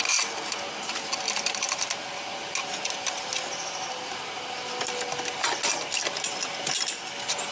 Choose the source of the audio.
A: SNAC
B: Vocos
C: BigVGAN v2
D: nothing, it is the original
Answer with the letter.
D